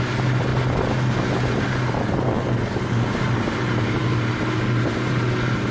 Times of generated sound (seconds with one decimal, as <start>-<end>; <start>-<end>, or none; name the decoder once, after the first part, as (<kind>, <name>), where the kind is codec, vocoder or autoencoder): none